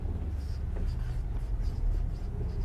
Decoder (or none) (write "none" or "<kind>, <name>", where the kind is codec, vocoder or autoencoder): none